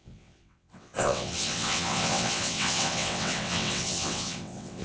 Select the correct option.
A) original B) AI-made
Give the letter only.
B